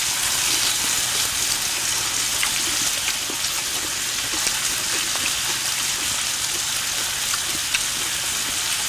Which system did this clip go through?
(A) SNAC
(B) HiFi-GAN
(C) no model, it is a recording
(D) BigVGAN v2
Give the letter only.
C